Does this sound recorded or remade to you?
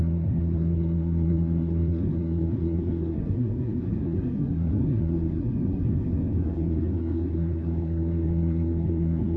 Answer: remade